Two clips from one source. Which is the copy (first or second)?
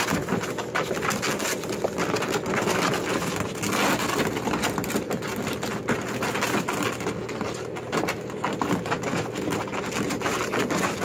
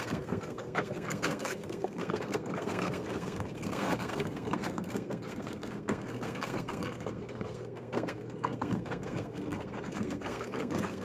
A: second